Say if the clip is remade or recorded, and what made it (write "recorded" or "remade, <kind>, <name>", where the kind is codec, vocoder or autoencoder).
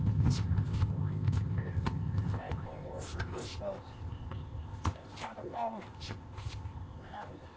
remade, codec, ZipCodec